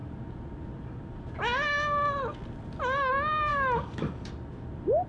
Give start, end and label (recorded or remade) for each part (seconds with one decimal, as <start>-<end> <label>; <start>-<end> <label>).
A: 0.0-3.5 recorded; 3.5-4.3 remade; 4.3-5.1 recorded